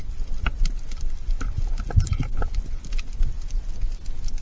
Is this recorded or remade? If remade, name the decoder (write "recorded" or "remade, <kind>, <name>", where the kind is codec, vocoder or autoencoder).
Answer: recorded